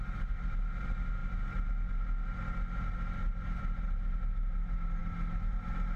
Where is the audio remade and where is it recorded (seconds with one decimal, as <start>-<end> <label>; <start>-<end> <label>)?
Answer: 0.0-6.0 recorded